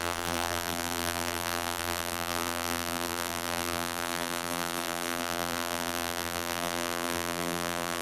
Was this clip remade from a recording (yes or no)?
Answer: yes